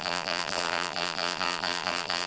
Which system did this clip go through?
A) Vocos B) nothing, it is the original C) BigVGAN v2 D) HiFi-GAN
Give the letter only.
C